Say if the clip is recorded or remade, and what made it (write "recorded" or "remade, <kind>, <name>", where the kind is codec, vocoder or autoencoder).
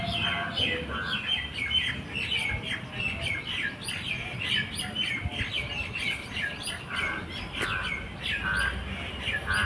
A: recorded